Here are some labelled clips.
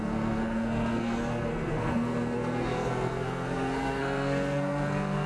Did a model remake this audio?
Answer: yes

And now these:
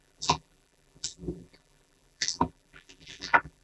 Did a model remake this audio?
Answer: yes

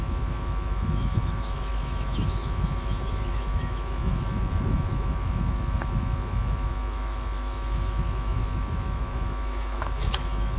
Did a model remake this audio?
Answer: yes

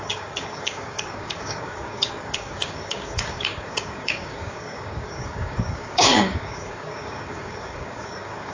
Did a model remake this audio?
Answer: yes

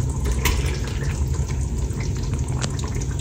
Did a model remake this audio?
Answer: no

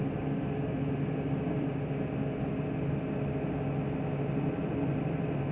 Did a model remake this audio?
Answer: no